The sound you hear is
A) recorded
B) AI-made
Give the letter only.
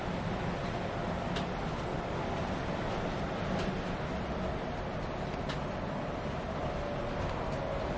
A